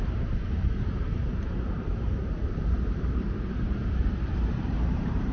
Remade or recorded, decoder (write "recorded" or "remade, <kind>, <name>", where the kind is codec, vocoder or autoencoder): remade, vocoder, BigVGAN v2